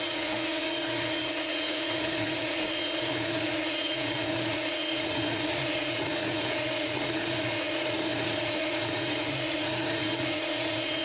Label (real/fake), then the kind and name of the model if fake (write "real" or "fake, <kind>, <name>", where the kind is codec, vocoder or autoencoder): fake, vocoder, Vocos